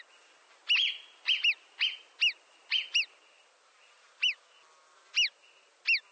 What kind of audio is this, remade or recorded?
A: recorded